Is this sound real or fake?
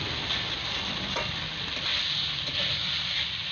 real